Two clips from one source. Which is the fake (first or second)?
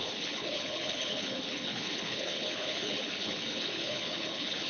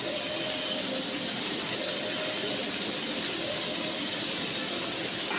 first